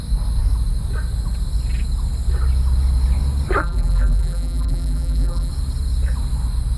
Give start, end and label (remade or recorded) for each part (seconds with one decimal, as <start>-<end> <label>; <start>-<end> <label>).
0.0-3.6 recorded; 3.6-5.5 remade; 5.5-6.8 recorded